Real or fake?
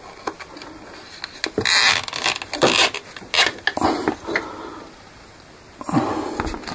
real